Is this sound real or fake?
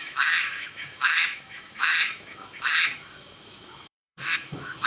fake